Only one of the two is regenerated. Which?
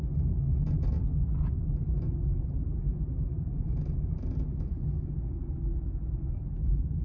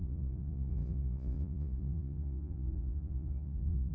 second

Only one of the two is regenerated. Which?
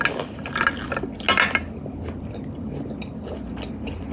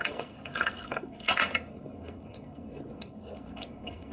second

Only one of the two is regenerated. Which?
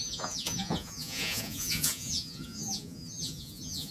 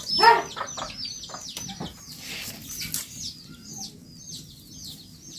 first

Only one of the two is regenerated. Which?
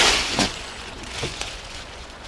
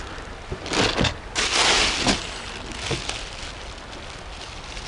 first